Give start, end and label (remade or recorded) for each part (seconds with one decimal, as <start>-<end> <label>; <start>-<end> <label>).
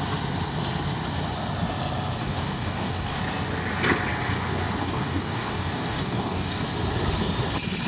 0.0-2.2 recorded; 2.2-3.2 remade; 3.2-4.8 recorded; 4.8-6.6 remade; 6.6-7.9 recorded